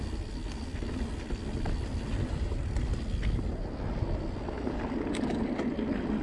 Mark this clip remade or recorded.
recorded